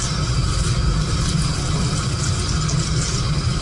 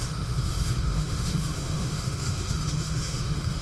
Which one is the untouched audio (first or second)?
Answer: first